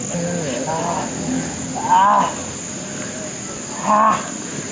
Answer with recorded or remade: recorded